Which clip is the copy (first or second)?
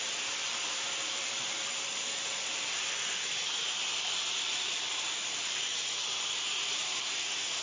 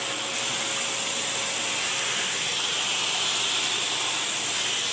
first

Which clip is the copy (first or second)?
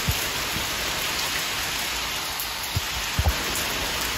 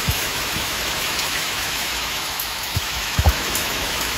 second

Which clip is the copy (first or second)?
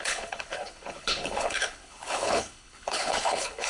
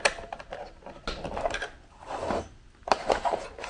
first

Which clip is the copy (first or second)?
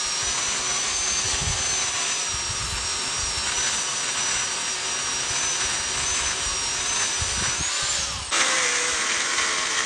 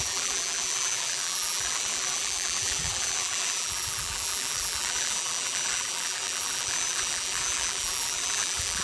second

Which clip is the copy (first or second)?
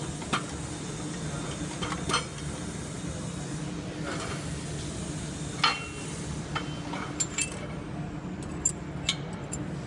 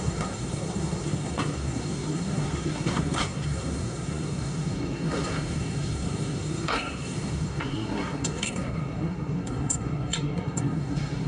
second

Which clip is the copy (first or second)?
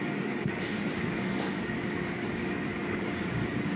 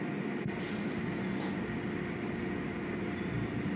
first